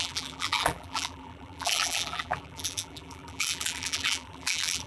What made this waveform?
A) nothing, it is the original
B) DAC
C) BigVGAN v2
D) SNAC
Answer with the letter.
C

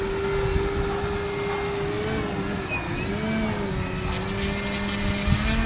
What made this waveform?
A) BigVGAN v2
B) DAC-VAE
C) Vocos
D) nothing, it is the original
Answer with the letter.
D